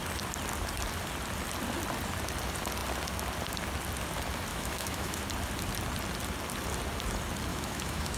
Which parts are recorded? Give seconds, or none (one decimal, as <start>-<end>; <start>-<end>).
0.0-4.5; 5.2-7.5